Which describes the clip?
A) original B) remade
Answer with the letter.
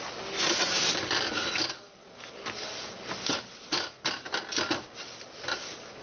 A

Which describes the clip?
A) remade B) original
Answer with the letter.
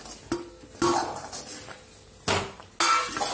B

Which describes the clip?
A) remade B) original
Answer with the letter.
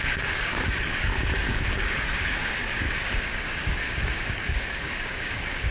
A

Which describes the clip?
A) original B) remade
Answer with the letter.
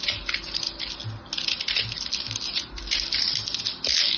A